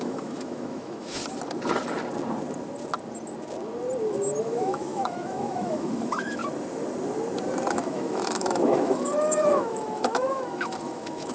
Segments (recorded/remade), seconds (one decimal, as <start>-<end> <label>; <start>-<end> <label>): 0.0-1.2 remade; 1.2-4.4 recorded; 4.4-6.4 remade; 6.4-7.7 recorded; 7.7-11.3 remade